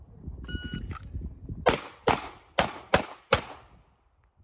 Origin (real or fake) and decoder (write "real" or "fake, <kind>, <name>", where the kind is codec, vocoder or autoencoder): real